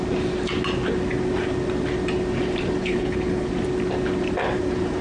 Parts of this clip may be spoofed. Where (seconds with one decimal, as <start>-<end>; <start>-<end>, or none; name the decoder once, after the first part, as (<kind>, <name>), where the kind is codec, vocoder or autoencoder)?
2.8-3.5 (codec, HILCodec)